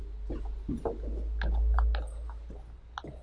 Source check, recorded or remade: recorded